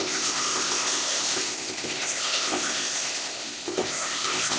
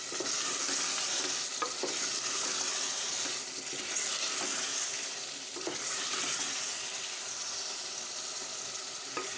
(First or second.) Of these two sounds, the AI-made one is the first